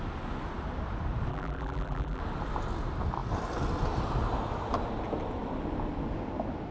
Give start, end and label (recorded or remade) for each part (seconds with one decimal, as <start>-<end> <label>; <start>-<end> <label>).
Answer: 0.0-1.3 recorded; 1.3-2.2 remade; 2.2-6.7 recorded